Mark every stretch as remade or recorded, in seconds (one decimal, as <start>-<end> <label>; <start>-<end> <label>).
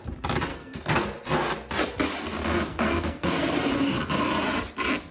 0.0-0.5 recorded; 0.5-1.0 remade; 1.0-2.7 recorded; 2.7-3.5 remade; 3.5-5.1 recorded